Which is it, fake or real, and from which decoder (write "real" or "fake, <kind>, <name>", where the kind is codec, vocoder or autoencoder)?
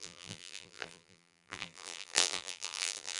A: fake, vocoder, BigVGAN v2